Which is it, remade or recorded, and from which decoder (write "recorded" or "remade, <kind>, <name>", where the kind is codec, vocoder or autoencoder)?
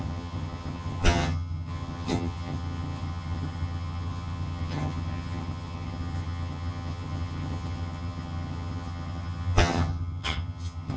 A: remade, vocoder, HiFi-GAN